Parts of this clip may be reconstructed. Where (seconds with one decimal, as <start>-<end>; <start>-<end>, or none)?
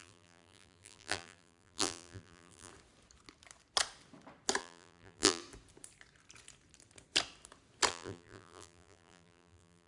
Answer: 0.0-2.7; 4.6-5.4; 7.9-9.9